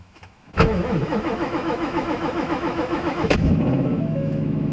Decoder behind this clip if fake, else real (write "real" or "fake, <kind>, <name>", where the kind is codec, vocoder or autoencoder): fake, autoencoder, DAC-VAE